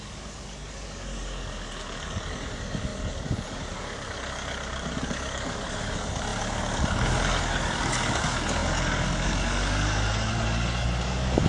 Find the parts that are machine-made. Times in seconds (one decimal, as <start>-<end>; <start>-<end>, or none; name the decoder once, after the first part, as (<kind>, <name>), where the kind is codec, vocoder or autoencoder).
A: 0.0-11.5 (codec, DAC)